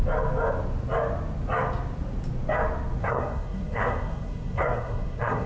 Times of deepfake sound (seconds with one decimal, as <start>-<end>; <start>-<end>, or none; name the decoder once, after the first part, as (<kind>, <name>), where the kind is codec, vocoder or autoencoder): 3.0-5.5 (codec, SNAC)